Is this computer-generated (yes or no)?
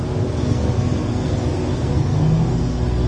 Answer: yes